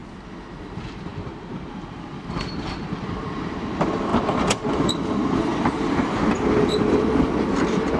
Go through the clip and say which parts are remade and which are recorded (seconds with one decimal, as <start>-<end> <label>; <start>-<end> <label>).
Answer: 0.0-0.6 recorded; 0.6-1.1 remade; 1.1-1.7 recorded; 1.7-8.0 remade